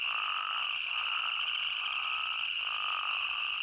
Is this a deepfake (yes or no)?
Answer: no